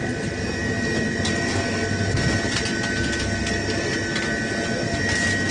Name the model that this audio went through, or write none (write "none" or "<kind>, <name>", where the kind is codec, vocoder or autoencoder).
none